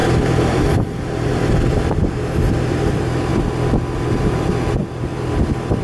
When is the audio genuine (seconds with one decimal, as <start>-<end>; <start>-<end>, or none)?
3.3-4.1; 5.1-5.8